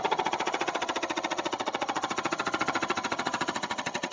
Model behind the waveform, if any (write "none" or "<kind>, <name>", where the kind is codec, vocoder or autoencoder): vocoder, HiFi-GAN